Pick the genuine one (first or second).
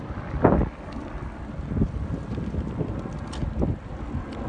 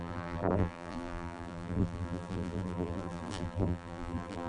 first